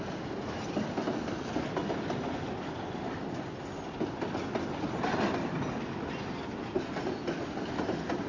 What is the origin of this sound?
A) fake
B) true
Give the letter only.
B